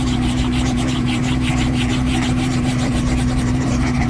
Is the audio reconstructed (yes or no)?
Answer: yes